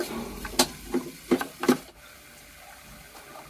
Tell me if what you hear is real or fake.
real